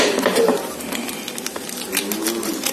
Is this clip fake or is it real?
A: real